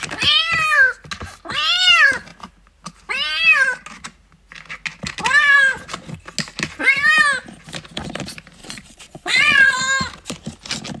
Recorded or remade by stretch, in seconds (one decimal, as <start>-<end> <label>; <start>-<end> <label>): 0.0-8.6 recorded; 8.6-9.8 remade; 9.8-11.0 recorded